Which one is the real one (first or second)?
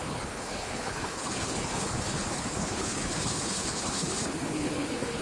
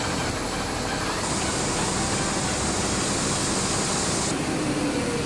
second